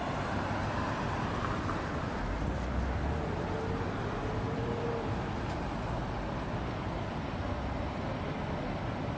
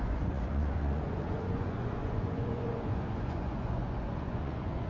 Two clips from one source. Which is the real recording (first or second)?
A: first